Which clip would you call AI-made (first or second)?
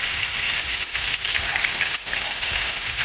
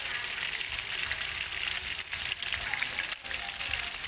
first